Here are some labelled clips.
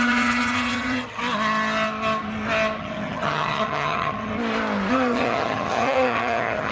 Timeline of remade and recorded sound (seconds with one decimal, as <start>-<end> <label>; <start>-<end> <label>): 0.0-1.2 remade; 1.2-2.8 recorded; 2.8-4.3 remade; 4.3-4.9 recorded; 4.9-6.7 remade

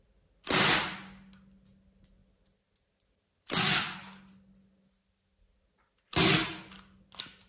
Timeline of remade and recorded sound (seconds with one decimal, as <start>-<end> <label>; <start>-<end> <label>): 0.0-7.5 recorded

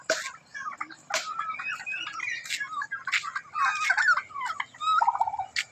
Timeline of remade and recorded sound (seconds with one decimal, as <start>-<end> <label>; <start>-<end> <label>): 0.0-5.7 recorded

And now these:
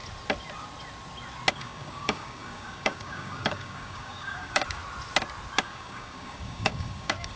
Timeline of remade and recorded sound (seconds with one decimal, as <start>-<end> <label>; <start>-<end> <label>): 0.0-1.5 recorded; 1.5-4.8 remade; 4.8-5.6 recorded; 5.6-7.4 remade